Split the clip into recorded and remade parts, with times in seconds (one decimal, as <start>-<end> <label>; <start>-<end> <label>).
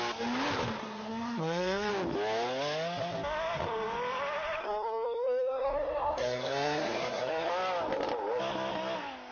0.0-0.8 recorded; 0.8-1.9 remade; 1.9-4.6 recorded; 4.6-7.5 remade; 7.5-9.3 recorded